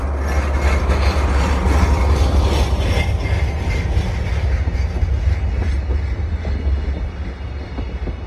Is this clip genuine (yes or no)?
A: yes